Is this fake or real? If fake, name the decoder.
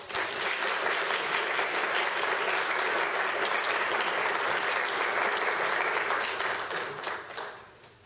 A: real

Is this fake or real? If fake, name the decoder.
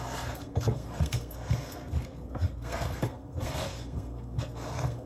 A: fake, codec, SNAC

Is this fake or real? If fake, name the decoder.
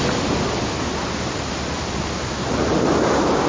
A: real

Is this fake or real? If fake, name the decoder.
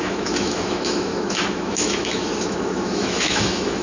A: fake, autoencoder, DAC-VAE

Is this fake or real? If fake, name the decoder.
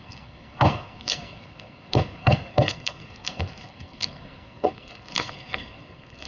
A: fake, codec, SNAC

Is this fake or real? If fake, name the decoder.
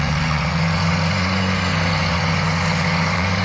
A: fake, vocoder, Vocos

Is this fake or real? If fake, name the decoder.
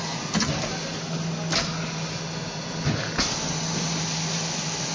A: real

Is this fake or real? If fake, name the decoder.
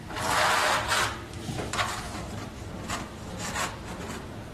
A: real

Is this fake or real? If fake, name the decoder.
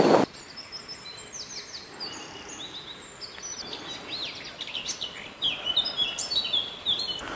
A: real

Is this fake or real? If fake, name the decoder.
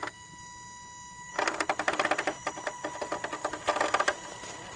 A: real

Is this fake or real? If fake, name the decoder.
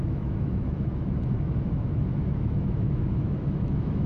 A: fake, autoencoder, DAC-VAE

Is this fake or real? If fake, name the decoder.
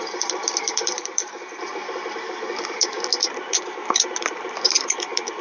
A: fake, vocoder, BigVGAN v2